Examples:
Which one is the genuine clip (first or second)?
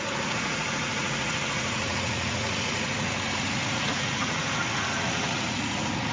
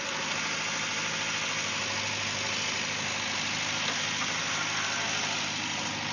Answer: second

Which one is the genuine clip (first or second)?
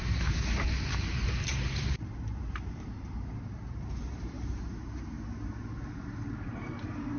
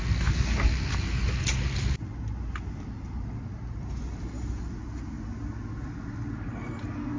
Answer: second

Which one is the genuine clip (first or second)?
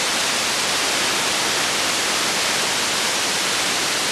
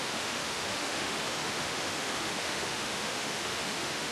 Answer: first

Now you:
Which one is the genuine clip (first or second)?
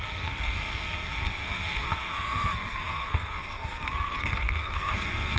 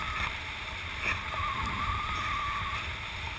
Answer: second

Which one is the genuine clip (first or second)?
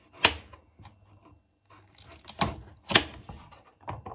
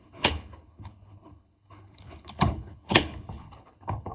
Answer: first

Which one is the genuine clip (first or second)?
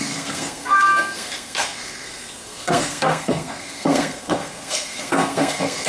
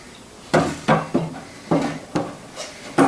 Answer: second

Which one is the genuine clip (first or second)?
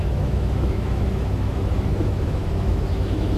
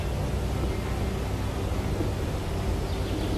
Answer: second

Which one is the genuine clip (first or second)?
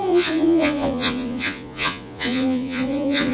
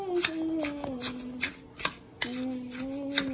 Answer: second